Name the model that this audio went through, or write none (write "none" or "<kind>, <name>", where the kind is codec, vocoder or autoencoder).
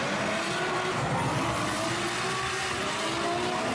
none